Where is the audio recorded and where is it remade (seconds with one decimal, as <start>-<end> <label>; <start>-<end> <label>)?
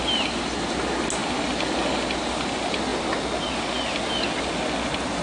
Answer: 0.0-5.2 recorded